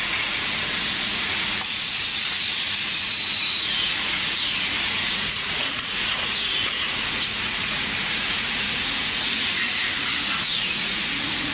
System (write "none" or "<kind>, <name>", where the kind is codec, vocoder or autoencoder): vocoder, Vocos